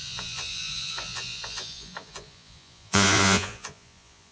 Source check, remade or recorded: remade